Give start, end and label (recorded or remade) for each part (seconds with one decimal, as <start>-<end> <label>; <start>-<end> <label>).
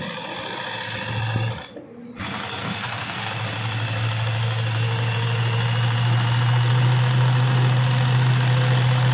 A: 0.0-2.6 recorded; 2.6-3.3 remade; 3.3-9.1 recorded